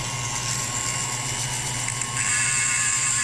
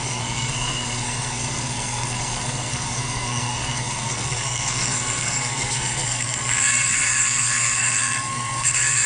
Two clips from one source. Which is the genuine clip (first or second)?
first